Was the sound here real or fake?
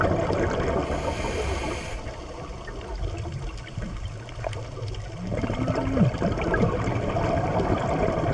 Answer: real